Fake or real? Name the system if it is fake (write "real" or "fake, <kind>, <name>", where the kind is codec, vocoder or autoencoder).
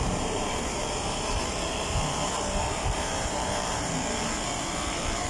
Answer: fake, vocoder, BigVGAN v2